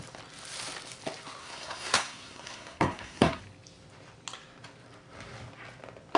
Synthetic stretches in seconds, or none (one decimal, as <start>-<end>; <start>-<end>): 1.4-3.4